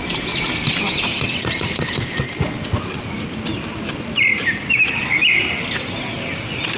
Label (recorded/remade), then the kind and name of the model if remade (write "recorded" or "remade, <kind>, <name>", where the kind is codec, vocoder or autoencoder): recorded